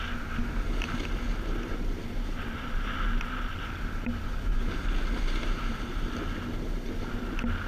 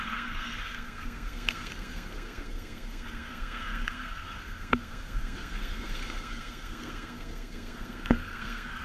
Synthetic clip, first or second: second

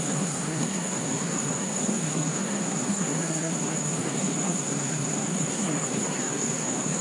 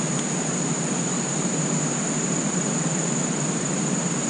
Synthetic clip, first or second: first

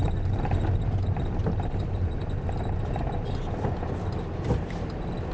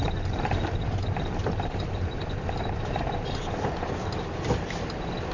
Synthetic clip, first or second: second